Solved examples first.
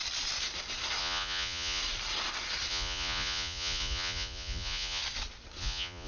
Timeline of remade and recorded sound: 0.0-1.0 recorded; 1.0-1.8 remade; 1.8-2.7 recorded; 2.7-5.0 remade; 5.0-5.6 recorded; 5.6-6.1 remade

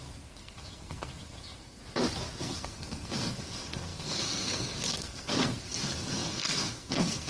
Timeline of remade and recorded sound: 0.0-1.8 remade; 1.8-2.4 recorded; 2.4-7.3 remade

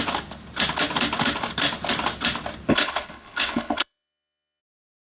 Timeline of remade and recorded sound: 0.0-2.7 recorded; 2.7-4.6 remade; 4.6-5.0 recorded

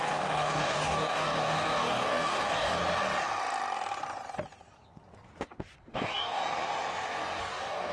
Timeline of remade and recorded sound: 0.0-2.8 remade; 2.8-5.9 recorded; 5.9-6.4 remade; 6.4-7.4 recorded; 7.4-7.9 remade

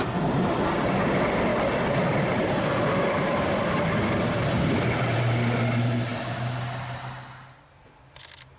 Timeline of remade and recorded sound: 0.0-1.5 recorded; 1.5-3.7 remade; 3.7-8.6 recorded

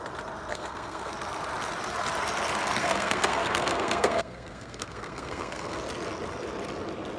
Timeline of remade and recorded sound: 0.0-0.5 recorded; 0.5-1.1 remade; 1.1-2.8 recorded; 2.8-5.8 remade; 5.8-7.2 recorded

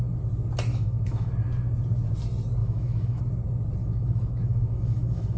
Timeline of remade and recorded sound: 0.0-0.7 recorded; 0.7-1.3 remade; 1.3-2.6 recorded; 2.6-3.2 remade; 3.2-3.8 recorded; 3.8-5.4 remade

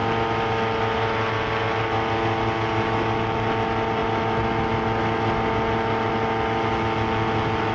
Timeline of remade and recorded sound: 0.0-7.7 recorded